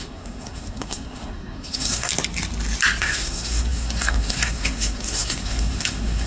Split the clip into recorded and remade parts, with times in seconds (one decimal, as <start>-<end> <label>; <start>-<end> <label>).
0.0-2.1 remade; 2.1-3.0 recorded; 3.0-6.3 remade